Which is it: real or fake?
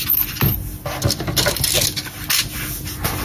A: real